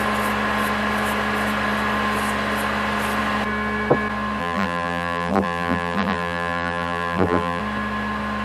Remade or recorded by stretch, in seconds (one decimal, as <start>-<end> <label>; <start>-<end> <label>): 0.0-4.4 recorded; 4.4-7.6 remade; 7.6-8.4 recorded